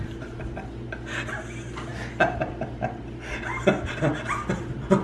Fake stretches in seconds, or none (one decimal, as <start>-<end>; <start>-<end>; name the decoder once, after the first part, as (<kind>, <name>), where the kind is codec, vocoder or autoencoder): none